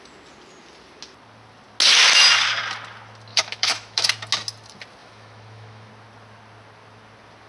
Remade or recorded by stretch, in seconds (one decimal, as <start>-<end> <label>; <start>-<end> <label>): 0.0-3.3 recorded; 3.3-4.1 remade; 4.1-5.0 recorded; 5.0-5.9 remade; 5.9-7.5 recorded